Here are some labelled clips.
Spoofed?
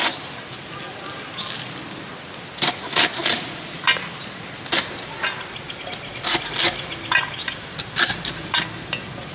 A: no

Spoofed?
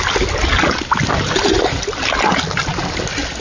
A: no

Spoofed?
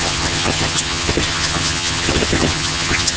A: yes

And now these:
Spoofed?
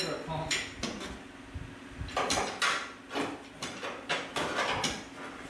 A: no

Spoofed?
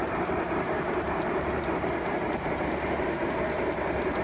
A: yes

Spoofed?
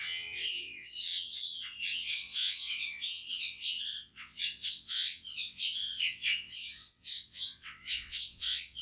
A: yes